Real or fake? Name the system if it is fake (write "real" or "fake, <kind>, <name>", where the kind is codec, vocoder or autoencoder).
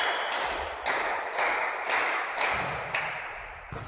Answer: real